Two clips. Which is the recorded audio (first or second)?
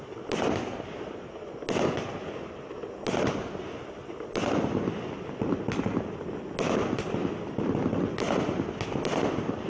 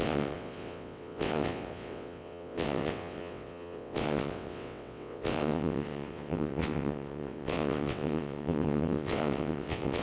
first